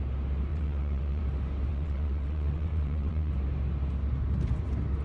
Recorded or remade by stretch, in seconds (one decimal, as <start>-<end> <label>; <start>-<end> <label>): 0.0-0.5 recorded; 0.5-1.2 remade; 1.2-1.7 recorded; 1.7-3.3 remade; 3.3-5.0 recorded